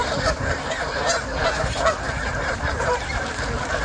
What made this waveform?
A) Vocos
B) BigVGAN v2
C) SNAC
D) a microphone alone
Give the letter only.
B